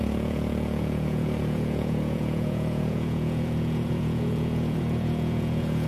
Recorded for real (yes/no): no